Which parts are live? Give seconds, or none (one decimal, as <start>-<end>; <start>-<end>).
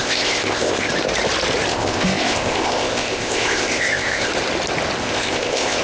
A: 0.9-1.7; 4.3-5.0